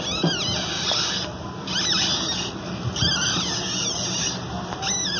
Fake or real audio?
real